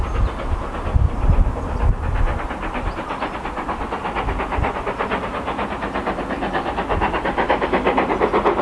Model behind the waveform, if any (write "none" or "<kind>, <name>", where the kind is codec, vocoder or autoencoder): none